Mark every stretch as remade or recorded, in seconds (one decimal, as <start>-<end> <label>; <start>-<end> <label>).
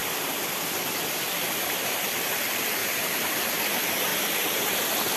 0.0-2.8 recorded; 2.8-3.4 remade; 3.4-4.1 recorded; 4.1-4.6 remade; 4.6-5.2 recorded